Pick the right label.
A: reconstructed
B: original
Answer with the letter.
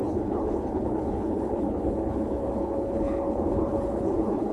A